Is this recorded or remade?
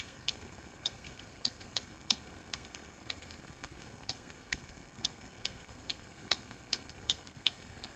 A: remade